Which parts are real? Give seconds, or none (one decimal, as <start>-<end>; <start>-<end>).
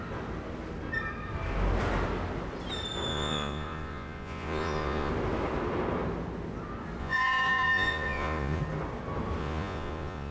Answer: 0.0-3.1; 5.1-7.0; 8.6-9.4